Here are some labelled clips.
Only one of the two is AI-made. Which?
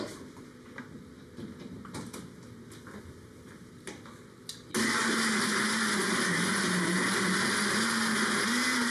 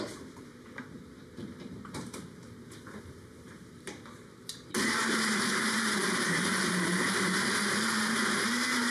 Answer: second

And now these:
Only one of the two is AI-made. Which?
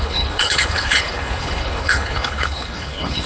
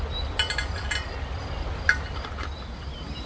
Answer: first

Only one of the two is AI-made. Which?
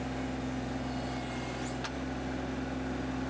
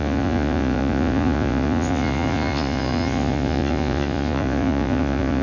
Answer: second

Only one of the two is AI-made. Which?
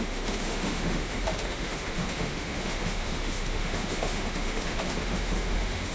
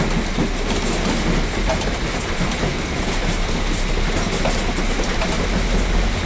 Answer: first